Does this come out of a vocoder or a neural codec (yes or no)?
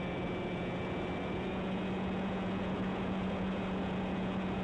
yes